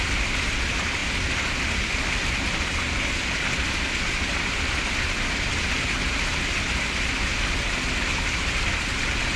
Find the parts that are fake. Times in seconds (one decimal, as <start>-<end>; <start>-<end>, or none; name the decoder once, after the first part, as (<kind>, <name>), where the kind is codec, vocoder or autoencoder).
none